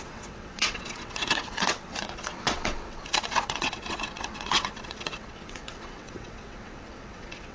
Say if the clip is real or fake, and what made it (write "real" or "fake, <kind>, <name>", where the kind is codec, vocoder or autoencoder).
fake, vocoder, WaveNeXt